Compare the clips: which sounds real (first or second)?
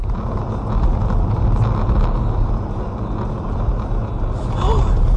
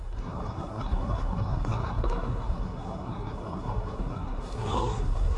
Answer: first